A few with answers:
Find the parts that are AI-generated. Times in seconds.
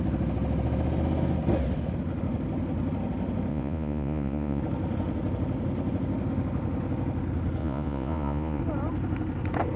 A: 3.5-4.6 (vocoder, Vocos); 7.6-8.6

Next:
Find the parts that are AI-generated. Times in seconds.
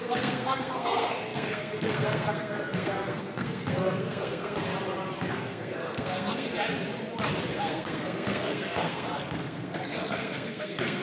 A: 0.0-4.7 (codec, SNAC); 5.3-6.5; 7.5-11.0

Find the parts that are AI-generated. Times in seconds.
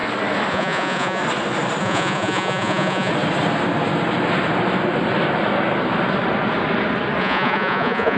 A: 0.5-1.2 (vocoder, Vocos); 1.8-3.1; 7.2-8.2